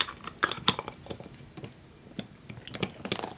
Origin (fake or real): real